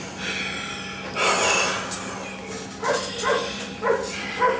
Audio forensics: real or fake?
real